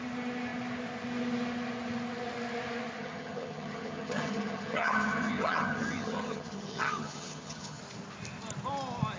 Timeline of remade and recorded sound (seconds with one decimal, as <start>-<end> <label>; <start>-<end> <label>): 0.0-3.0 recorded; 3.0-7.8 remade; 7.8-9.2 recorded